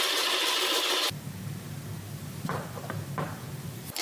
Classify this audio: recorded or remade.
remade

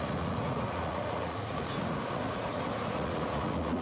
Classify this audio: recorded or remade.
remade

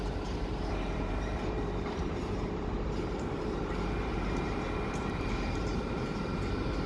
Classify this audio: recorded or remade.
remade